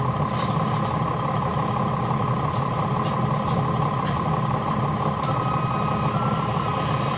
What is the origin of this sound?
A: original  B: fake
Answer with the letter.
A